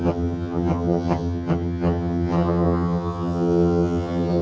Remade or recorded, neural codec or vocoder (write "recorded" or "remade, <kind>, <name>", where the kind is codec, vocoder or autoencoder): remade, vocoder, HiFi-GAN